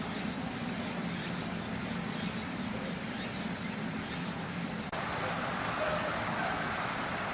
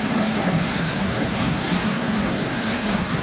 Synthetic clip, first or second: second